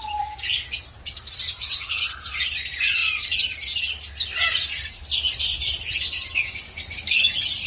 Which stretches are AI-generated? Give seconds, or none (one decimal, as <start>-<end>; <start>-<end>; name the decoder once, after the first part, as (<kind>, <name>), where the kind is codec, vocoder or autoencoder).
none